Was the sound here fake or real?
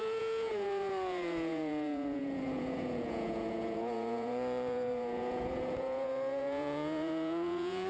fake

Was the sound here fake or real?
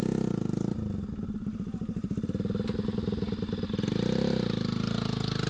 real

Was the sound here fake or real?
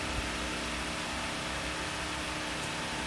real